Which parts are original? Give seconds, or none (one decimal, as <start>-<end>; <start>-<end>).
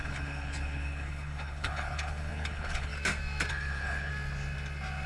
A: 2.9-3.5; 4.1-5.1